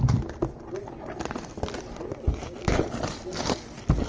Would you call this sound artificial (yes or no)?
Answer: no